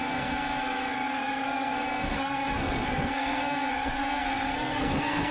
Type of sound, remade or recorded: remade